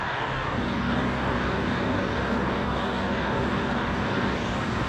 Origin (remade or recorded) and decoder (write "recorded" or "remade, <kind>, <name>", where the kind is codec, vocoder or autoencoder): remade, codec, DAC